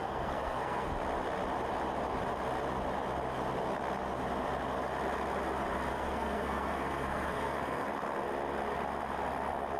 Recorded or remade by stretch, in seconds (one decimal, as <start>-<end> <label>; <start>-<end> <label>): 0.0-0.9 remade; 0.9-5.9 recorded; 5.9-7.9 remade; 7.9-9.8 recorded